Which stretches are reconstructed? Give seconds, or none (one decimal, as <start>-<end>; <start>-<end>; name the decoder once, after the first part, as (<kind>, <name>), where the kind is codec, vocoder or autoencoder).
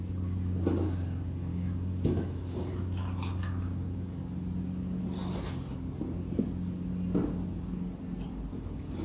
1.5-4.2 (autoencoder, DAC-VAE)